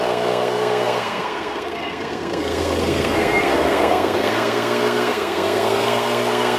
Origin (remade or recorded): remade